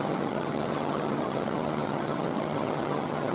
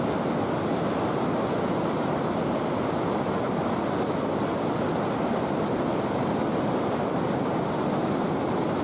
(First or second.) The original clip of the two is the second